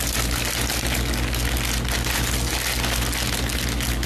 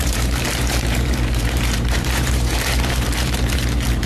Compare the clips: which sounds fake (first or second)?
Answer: second